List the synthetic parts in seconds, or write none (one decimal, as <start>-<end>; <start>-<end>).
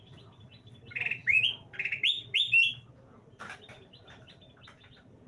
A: none